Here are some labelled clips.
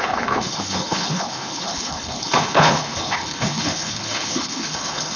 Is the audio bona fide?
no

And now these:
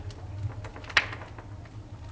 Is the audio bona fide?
yes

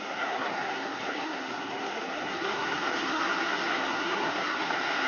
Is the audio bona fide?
no